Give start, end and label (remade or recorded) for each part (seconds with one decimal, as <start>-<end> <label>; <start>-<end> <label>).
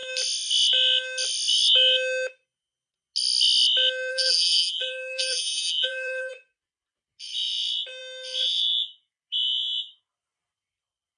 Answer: 0.0-4.1 recorded; 4.1-6.3 remade; 6.3-11.2 recorded